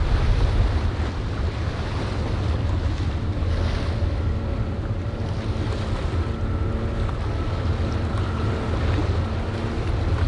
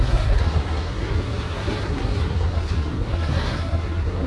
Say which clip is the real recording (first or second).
first